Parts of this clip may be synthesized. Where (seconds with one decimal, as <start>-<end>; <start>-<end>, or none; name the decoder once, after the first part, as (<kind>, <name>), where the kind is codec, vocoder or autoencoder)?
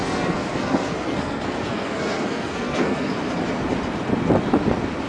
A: 0.0-3.1 (codec, SNAC)